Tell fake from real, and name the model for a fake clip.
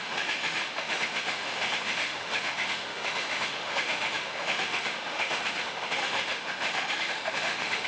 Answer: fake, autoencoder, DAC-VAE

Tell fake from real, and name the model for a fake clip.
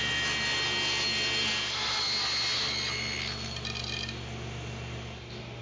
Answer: real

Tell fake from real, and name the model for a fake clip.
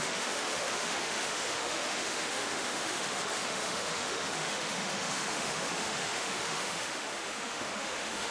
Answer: fake, autoencoder, DAC-VAE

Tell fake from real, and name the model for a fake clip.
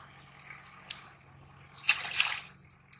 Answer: real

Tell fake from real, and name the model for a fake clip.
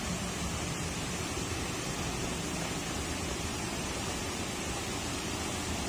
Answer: real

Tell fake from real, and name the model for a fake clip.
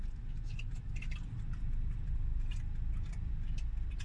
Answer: fake, vocoder, BigVGAN v2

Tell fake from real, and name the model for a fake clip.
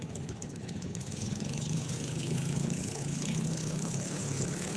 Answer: fake, codec, HILCodec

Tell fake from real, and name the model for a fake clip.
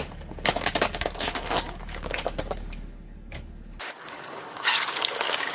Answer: fake, codec, DAC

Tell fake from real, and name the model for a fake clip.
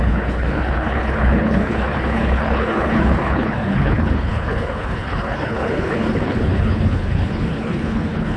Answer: fake, codec, HILCodec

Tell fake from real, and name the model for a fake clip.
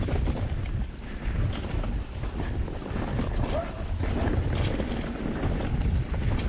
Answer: real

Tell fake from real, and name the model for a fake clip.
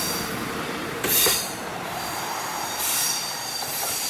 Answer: fake, vocoder, BigVGAN v2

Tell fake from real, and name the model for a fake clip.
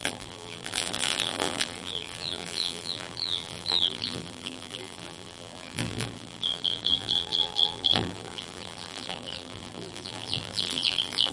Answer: fake, vocoder, BigVGAN v2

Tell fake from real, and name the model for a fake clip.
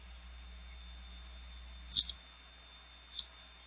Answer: real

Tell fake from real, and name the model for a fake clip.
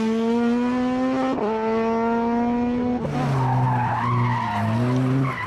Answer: real